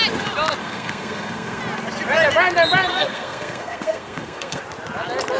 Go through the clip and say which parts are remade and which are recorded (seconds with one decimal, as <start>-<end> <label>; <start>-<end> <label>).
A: 0.0-0.6 recorded; 0.6-1.6 remade; 1.6-2.9 recorded; 2.9-4.6 remade; 4.6-5.4 recorded